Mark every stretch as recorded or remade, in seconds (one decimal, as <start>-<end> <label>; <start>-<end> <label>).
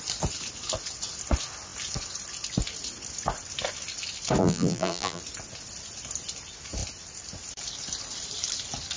0.0-4.4 recorded; 4.4-5.2 remade; 5.2-9.0 recorded